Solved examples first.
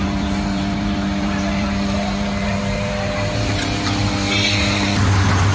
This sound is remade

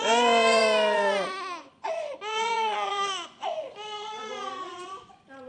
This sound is remade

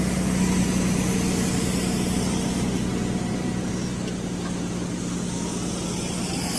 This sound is recorded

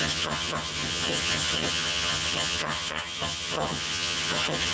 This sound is remade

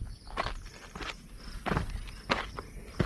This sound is recorded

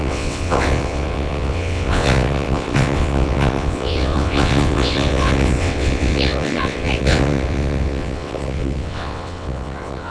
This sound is remade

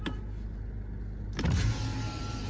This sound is recorded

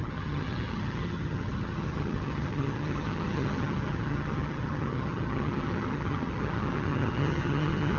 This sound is remade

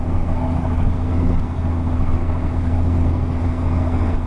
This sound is remade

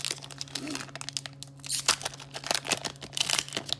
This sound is recorded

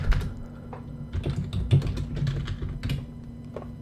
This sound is recorded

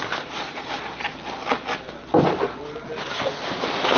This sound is recorded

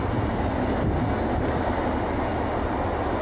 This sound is recorded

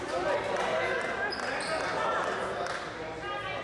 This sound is recorded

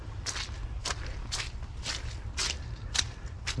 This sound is recorded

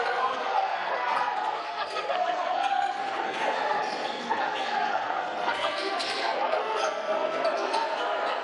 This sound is remade